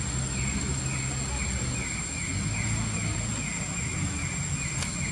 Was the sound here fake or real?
real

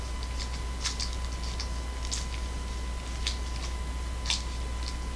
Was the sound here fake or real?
real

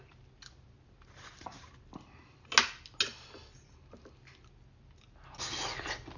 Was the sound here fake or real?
real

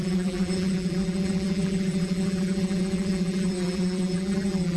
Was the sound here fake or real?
fake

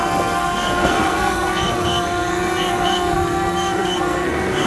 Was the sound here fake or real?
fake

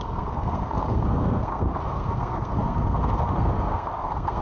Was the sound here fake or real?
fake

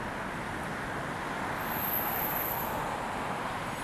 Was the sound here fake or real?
real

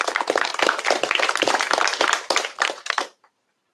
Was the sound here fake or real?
fake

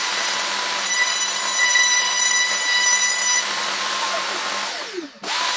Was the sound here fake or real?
real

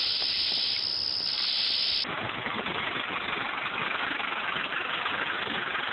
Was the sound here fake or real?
real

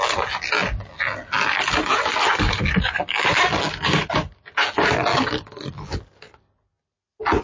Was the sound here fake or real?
real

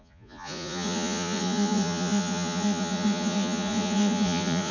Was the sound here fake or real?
fake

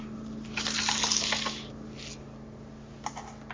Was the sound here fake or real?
real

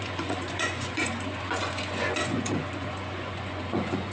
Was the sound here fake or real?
fake